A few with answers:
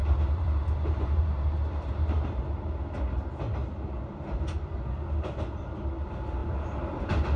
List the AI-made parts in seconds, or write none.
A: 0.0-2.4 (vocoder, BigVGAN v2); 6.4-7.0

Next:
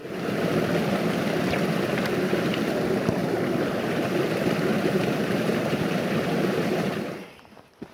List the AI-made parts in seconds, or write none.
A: 0.0-0.6 (vocoder, BigVGAN v2); 3.2-4.0; 4.7-7.9

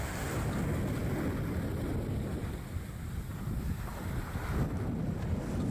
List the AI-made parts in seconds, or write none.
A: 2.3-4.0 (vocoder, BigVGAN v2)

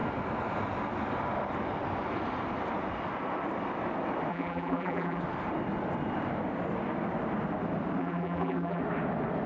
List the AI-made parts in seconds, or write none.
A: 4.3-5.2 (vocoder, BigVGAN v2); 8.0-8.8